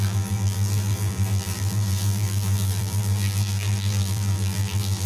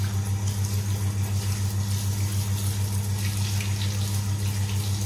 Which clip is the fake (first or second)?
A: first